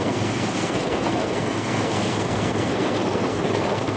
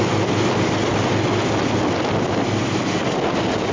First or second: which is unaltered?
second